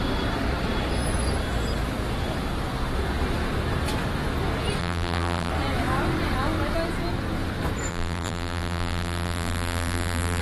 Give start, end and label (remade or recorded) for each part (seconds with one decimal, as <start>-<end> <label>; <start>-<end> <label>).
0.0-4.8 recorded; 4.8-5.5 remade; 5.5-7.9 recorded; 7.9-10.4 remade